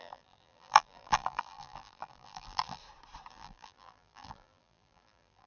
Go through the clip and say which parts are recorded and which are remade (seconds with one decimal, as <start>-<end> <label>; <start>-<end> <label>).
0.0-2.8 remade; 2.8-3.3 recorded; 3.3-5.5 remade